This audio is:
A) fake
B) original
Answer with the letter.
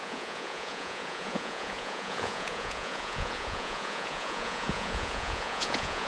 A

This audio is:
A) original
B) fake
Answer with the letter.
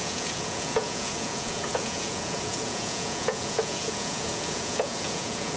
B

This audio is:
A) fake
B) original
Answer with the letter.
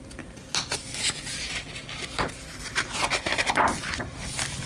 B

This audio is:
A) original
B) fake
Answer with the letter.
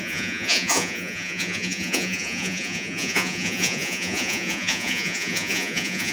B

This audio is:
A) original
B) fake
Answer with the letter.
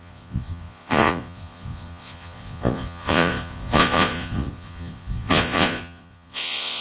B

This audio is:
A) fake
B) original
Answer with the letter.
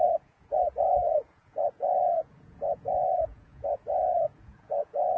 A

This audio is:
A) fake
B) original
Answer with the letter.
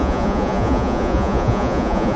A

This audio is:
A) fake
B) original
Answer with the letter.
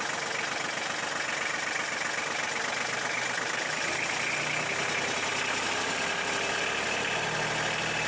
B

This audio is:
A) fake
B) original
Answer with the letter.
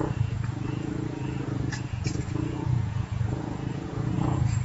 A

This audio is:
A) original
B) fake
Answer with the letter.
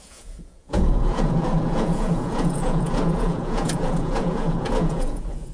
B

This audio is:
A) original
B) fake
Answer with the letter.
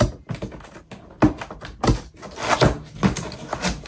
A